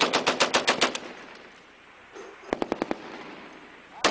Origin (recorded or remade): recorded